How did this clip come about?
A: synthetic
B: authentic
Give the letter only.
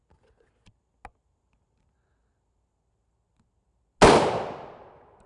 B